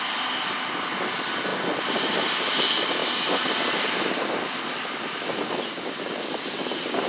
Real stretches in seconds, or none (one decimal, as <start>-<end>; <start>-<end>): 0.0-7.1